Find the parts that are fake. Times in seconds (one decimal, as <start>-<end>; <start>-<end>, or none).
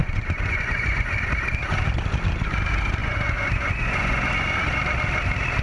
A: 0.0-1.3; 3.0-4.3